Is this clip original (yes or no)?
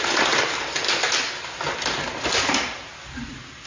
yes